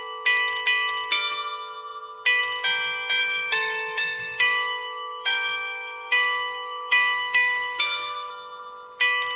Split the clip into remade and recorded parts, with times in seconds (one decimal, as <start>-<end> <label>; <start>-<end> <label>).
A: 0.0-3.2 recorded; 3.2-8.3 remade; 8.3-9.4 recorded